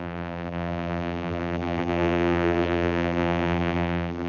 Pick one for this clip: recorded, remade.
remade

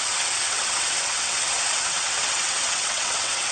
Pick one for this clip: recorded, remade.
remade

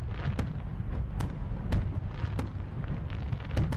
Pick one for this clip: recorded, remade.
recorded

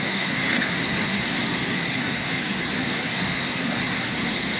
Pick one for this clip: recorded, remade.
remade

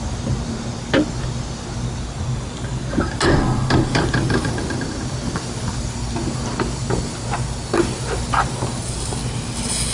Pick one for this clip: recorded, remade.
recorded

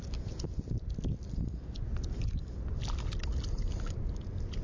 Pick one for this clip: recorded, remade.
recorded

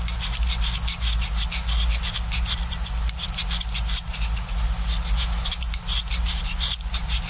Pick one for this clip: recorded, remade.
recorded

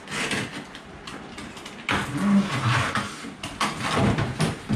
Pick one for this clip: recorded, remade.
recorded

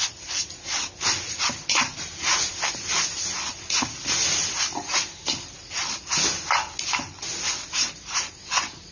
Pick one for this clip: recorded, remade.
recorded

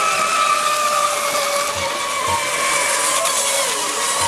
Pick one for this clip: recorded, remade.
recorded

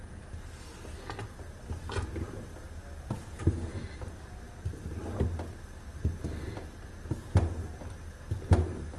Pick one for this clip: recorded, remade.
recorded